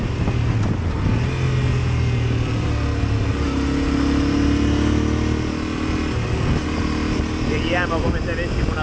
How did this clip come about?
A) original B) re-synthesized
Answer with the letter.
A